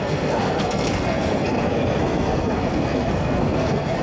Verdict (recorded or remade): remade